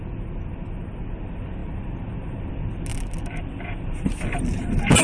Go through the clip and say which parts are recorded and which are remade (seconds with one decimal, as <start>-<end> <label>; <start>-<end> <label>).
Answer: 0.0-5.0 recorded